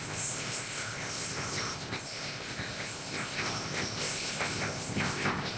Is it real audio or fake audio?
fake